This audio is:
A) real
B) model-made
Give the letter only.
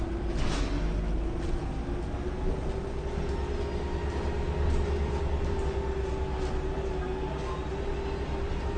A